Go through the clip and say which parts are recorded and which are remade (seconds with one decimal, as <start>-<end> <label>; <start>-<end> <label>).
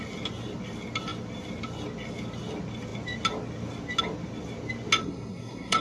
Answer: 0.0-5.0 recorded; 5.0-5.8 remade